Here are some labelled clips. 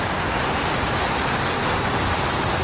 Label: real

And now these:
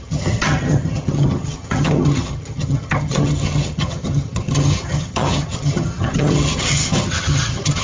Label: fake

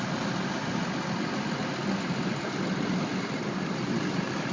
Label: real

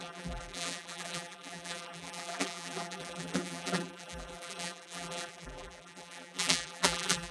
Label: fake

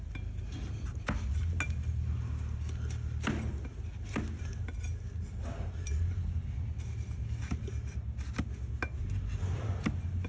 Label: real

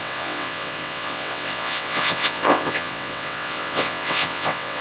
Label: fake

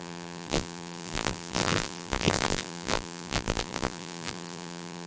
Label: fake